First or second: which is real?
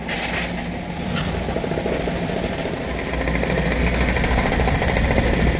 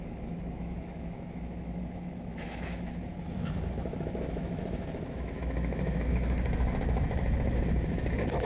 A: first